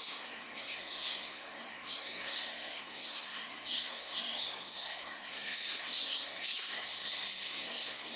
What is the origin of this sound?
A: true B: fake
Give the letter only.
B